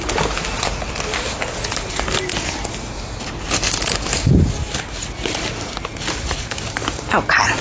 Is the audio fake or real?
real